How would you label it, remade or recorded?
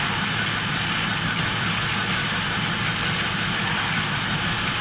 recorded